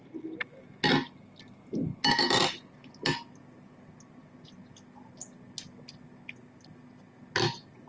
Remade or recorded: recorded